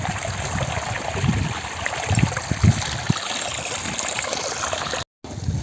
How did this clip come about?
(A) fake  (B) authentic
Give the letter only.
B